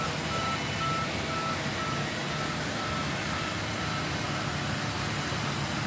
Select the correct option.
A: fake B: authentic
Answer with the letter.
B